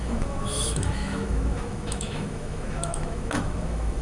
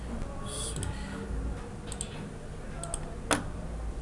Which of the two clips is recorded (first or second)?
second